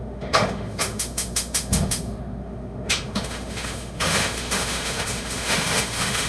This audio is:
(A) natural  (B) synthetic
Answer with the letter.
B